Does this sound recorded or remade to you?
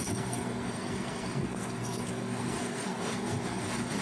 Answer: remade